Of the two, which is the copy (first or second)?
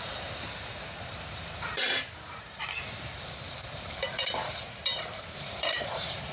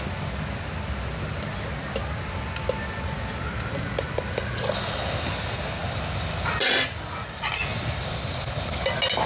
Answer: first